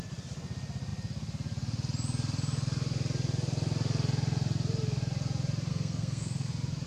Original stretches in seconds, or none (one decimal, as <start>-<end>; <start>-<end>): 0.0-5.7; 6.5-6.9